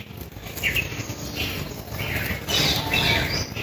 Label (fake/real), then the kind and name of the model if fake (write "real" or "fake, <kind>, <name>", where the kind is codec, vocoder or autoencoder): real